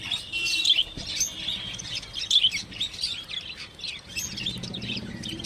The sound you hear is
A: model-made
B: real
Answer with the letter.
B